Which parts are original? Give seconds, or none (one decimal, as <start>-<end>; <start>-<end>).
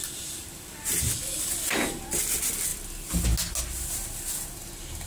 1.1-5.1